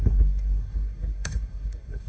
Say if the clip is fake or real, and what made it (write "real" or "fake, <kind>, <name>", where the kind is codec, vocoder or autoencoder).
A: fake, codec, SNAC